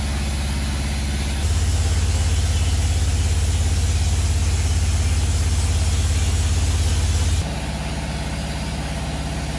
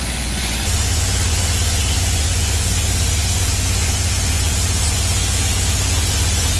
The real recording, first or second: first